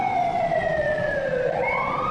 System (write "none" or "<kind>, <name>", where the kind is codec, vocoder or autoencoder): vocoder, Vocos